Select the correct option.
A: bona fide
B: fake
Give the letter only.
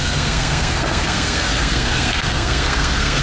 B